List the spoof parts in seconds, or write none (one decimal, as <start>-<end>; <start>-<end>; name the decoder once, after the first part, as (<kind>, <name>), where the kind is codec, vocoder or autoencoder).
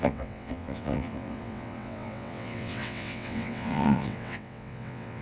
0.0-5.2 (vocoder, WaveNeXt)